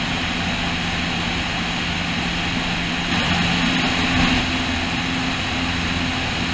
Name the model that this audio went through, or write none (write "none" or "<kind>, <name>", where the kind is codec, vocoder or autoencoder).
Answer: none